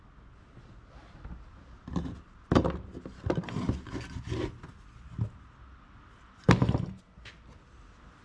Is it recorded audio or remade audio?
recorded